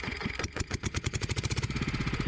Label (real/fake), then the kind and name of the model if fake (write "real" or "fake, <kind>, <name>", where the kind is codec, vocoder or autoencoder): fake, vocoder, Vocos